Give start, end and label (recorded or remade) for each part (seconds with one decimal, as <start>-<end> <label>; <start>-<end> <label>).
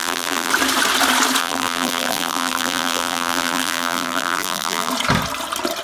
0.0-0.5 remade; 0.5-1.4 recorded; 1.4-4.9 remade; 4.9-5.8 recorded